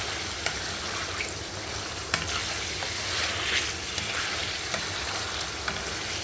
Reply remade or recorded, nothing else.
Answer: recorded